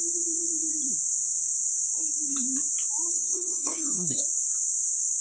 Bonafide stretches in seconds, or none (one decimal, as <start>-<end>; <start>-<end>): 0.0-3.1; 4.2-5.2